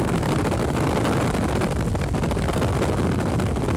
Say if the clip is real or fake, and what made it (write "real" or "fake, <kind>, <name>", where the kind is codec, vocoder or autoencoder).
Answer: real